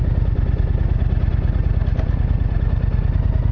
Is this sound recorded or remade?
recorded